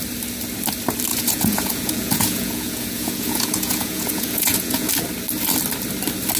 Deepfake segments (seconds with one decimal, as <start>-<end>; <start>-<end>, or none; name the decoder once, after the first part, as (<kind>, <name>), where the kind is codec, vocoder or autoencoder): 1.1-4.9 (vocoder, Vocos)